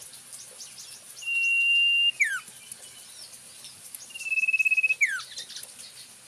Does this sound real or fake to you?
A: real